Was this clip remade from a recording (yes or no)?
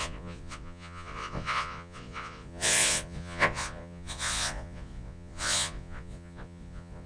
yes